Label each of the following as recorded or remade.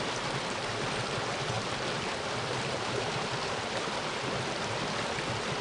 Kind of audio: recorded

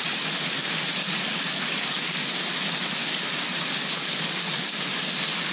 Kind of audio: recorded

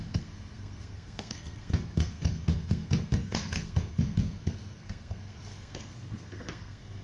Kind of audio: remade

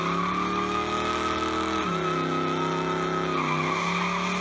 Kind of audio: recorded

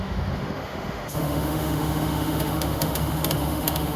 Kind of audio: remade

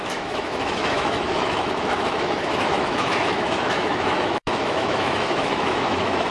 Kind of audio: remade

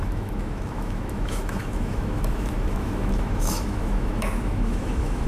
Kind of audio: remade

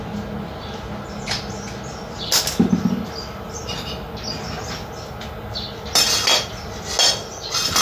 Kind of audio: recorded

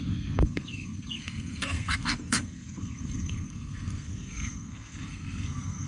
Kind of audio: remade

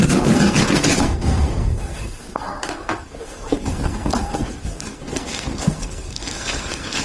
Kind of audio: remade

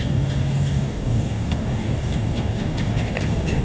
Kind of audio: remade